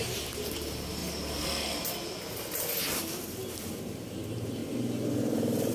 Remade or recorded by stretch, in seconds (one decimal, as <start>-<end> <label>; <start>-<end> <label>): 0.0-1.0 remade; 1.0-2.8 recorded; 2.8-4.6 remade; 4.6-5.7 recorded